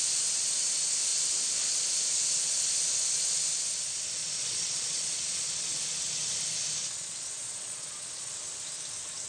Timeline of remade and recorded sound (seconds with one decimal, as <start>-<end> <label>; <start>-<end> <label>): 0.0-4.2 recorded; 4.2-5.8 remade; 5.8-6.8 recorded; 6.8-8.3 remade; 8.3-9.3 recorded